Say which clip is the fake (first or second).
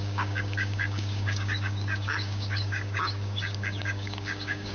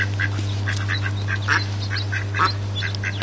first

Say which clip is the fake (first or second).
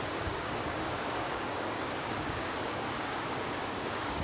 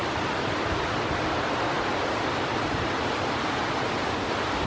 first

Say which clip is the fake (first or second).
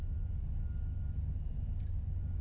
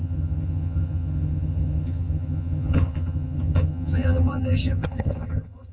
second